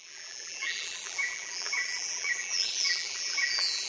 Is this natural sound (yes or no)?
no